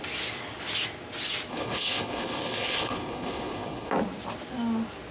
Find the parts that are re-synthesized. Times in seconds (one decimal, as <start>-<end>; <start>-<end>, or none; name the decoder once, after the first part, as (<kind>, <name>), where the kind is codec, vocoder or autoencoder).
1.5-3.9 (codec, HILCodec)